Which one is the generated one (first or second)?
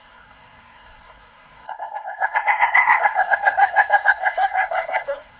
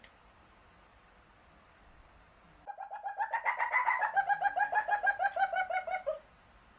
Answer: first